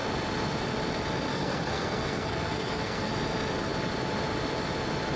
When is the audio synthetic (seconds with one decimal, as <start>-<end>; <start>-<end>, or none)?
1.3-3.1